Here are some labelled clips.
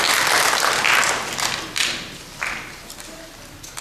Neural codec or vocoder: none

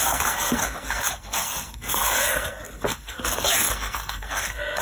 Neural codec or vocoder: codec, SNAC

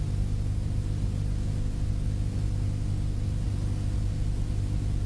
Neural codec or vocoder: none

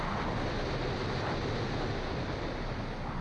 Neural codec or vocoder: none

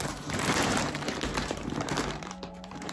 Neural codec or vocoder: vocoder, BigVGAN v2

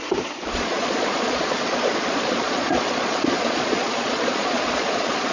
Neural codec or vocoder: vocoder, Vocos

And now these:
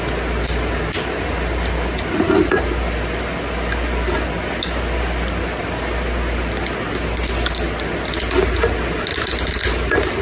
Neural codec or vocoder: none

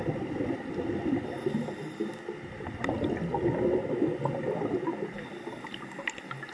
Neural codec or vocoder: none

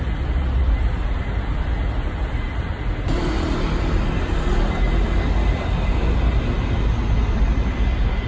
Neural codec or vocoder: none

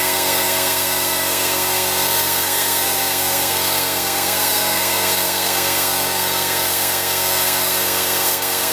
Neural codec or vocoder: codec, SNAC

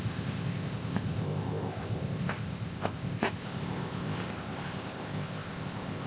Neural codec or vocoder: codec, ZipCodec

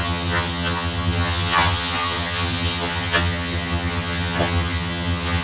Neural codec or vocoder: vocoder, HiFi-GAN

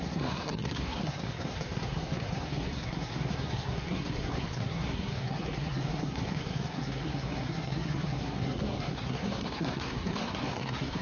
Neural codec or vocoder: codec, SNAC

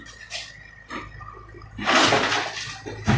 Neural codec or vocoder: none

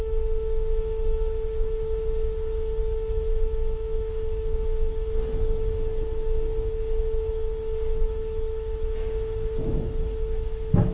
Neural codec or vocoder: autoencoder, DAC-VAE